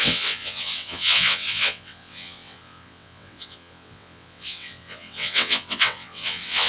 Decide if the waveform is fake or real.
fake